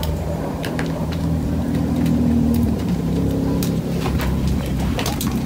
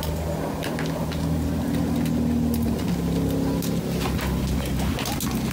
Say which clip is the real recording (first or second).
second